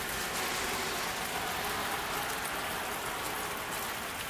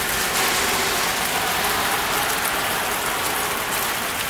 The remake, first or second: second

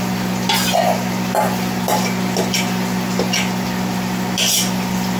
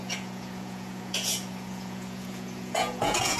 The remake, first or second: second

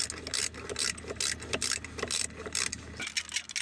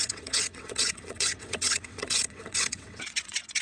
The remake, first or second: second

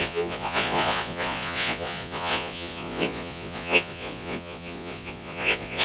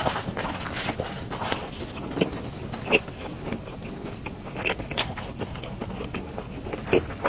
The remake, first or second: first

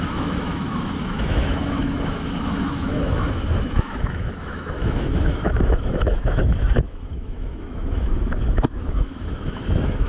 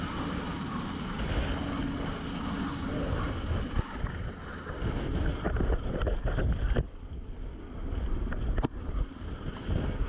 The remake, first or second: first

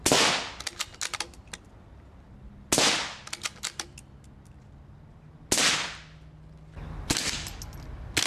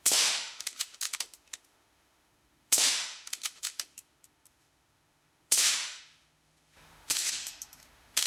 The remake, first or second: second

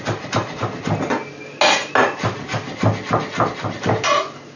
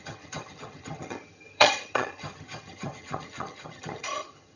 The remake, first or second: second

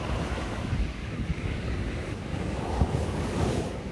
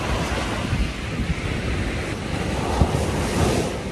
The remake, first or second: first